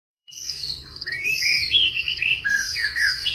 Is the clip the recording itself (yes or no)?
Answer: no